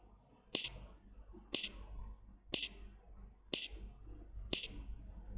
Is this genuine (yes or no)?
yes